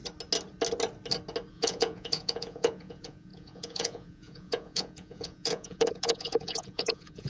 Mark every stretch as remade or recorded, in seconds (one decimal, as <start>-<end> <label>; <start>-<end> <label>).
0.0-1.5 recorded; 1.5-7.3 remade